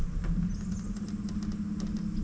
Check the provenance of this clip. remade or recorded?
recorded